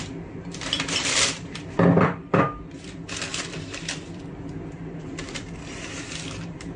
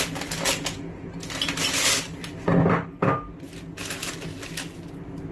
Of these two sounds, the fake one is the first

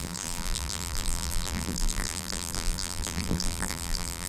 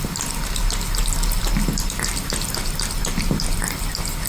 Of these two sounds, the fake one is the first